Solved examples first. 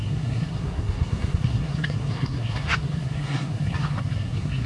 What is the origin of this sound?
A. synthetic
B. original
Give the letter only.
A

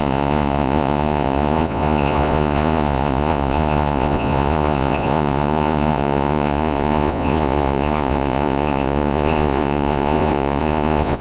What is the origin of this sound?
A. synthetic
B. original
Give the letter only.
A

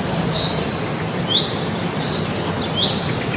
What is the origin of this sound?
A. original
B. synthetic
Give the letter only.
A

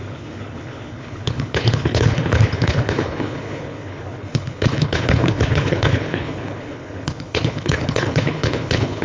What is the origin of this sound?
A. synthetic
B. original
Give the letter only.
A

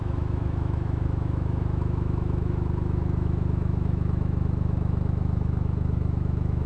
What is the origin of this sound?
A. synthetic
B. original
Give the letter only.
A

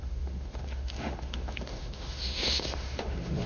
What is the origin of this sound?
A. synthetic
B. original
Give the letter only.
A